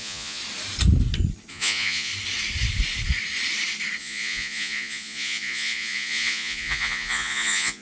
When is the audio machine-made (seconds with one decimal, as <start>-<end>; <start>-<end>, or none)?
0.0-0.4; 1.5-2.1; 4.0-7.8